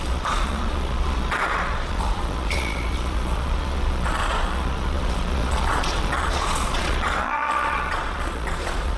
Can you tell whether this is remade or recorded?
remade